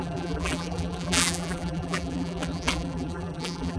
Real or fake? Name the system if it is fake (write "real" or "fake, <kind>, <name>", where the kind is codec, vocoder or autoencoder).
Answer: fake, vocoder, BigVGAN v2